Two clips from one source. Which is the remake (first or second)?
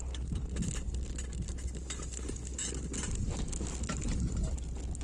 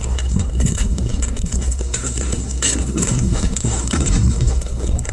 second